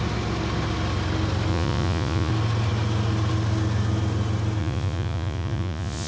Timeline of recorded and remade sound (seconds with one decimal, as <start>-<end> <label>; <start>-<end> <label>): 0.0-1.5 recorded; 1.5-2.3 remade; 2.3-4.6 recorded; 4.6-6.1 remade